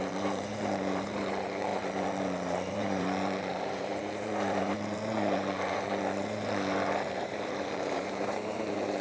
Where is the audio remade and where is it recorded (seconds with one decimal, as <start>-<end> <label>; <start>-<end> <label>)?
0.0-9.0 remade